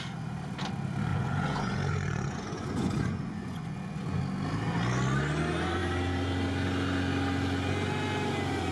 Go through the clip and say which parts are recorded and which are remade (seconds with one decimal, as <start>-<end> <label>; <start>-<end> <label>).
0.0-1.1 recorded; 1.1-4.2 remade; 4.2-8.7 recorded